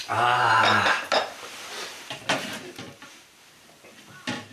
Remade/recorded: recorded